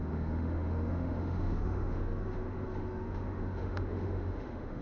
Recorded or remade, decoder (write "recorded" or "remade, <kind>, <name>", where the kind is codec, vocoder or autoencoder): remade, autoencoder, DAC-VAE